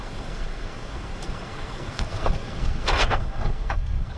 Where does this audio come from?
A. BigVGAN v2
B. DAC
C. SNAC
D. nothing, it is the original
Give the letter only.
C